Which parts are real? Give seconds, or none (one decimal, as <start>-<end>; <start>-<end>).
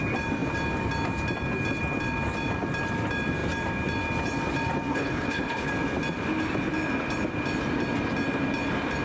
0.0-4.9; 5.7-9.0